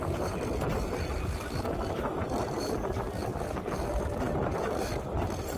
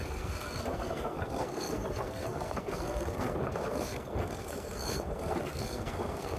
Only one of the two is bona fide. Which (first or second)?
first